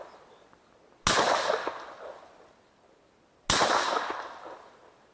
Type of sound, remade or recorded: recorded